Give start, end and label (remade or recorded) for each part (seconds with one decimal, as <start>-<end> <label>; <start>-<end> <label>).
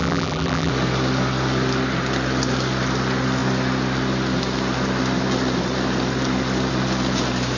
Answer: 0.0-0.7 remade; 0.7-7.6 recorded